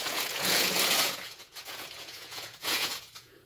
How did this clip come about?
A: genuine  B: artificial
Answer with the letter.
B